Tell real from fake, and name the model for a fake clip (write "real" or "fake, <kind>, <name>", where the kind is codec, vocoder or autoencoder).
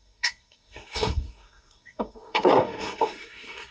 fake, codec, SNAC